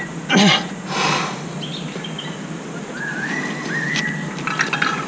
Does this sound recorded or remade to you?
recorded